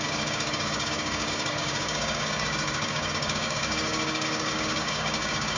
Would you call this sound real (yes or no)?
no